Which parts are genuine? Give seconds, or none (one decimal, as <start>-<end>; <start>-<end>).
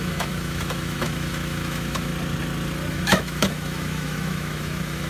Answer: 2.1-2.9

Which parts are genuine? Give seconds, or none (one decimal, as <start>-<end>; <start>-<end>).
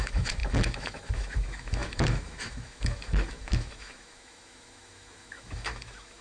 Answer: none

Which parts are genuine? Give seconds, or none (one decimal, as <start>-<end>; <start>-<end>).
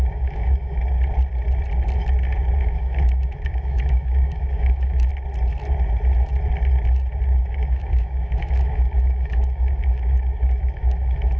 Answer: 0.8-2.6; 5.1-7.4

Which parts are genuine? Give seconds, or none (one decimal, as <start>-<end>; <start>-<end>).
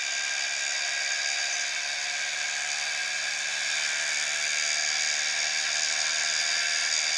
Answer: 0.0-7.2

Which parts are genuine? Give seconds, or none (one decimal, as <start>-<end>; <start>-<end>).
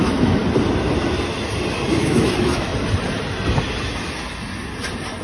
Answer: 0.4-2.0; 2.7-5.2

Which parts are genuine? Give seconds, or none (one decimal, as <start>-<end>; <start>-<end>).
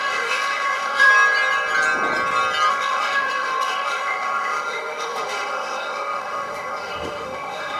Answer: 1.1-2.7